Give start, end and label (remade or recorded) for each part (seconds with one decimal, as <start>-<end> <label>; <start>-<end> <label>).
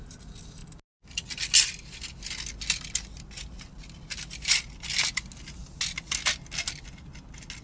0.0-7.6 recorded